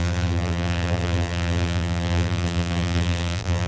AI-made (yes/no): yes